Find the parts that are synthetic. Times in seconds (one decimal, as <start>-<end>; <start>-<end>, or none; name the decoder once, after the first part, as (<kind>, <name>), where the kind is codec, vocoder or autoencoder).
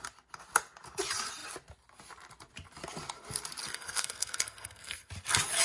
3.6-5.1 (codec, SNAC)